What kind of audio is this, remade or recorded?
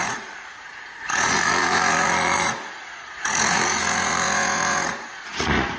remade